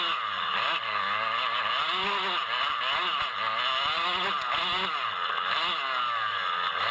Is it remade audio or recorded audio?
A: recorded